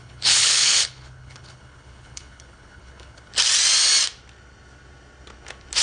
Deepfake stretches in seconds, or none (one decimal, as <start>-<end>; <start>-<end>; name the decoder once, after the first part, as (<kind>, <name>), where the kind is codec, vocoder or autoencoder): 0.0-3.3 (codec, HILCodec)

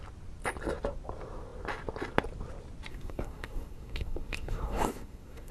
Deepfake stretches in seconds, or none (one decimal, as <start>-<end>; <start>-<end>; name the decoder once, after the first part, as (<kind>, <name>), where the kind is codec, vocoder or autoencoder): 2.9-5.5 (codec, SNAC)

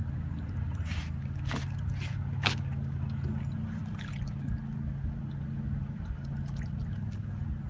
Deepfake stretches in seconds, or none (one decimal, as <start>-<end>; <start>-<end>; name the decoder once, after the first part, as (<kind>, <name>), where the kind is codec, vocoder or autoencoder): none